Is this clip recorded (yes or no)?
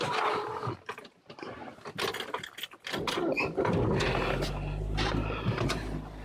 yes